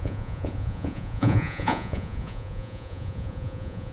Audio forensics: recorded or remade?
remade